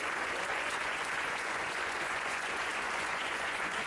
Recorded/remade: remade